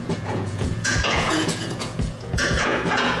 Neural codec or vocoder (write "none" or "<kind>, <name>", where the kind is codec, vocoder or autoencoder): vocoder, Vocos